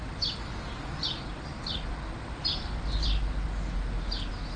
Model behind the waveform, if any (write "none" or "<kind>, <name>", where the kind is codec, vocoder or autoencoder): none